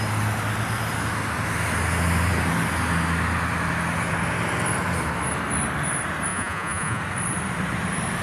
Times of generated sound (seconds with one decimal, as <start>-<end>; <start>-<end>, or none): 6.3-7.0